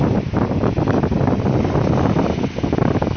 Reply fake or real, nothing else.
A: real